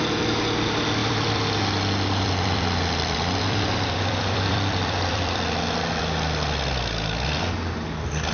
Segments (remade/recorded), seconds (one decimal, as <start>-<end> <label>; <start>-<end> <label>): 0.0-1.0 recorded; 1.0-6.0 remade; 6.0-8.3 recorded